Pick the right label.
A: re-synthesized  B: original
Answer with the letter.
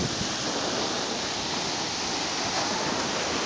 B